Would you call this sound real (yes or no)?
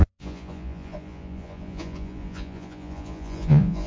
no